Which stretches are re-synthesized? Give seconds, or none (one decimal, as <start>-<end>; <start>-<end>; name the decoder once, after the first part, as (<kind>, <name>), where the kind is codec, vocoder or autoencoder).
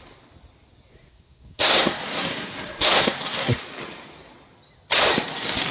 0.9-3.6 (codec, SNAC)